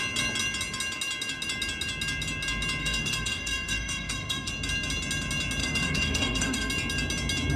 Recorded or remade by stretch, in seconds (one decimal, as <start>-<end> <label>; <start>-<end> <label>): 0.0-2.8 recorded; 2.8-4.5 remade; 4.5-5.6 recorded; 5.6-6.7 remade; 6.7-7.6 recorded